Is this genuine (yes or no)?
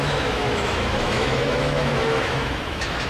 no